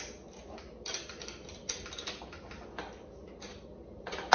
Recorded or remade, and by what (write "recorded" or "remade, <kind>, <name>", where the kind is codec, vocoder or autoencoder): recorded